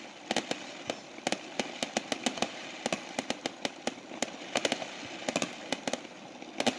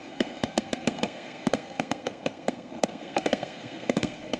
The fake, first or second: second